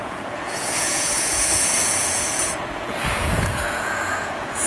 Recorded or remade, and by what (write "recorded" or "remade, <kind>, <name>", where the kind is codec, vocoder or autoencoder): remade, vocoder, Vocos